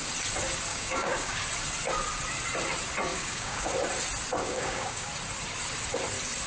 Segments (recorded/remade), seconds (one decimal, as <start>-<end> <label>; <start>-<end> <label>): 0.0-0.7 recorded; 0.7-1.4 remade; 1.4-3.1 recorded; 3.1-3.7 remade; 3.7-4.4 recorded; 4.4-5.1 remade; 5.1-6.5 recorded